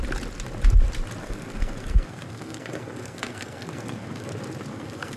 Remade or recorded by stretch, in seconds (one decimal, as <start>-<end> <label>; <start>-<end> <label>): 0.0-1.2 recorded; 1.2-4.3 remade; 4.3-4.7 recorded; 4.7-5.2 remade